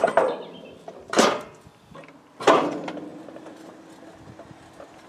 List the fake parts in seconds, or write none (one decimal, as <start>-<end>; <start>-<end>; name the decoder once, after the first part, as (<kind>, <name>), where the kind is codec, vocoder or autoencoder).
none